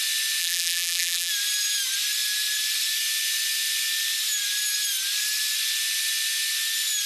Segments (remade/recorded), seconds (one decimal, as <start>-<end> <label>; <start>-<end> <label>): 0.0-0.4 recorded; 0.4-1.3 remade; 1.3-7.1 recorded